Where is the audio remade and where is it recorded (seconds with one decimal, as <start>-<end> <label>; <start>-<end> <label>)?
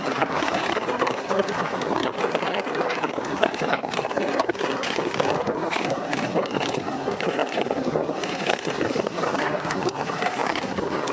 0.0-11.1 remade